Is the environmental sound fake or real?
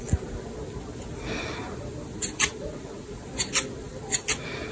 real